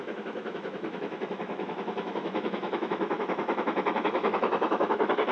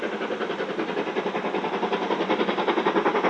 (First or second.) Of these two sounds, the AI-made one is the first